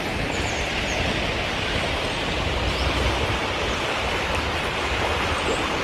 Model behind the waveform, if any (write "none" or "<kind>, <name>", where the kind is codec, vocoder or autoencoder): none